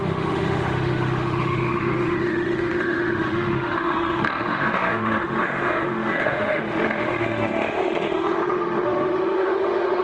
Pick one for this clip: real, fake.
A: fake